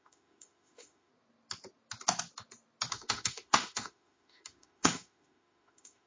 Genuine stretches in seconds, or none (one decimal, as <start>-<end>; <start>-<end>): 1.1-2.9